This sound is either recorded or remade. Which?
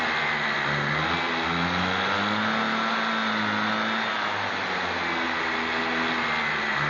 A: recorded